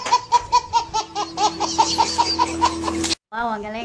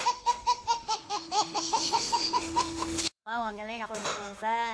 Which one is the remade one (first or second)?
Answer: second